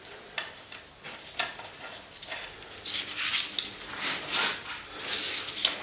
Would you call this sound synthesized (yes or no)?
no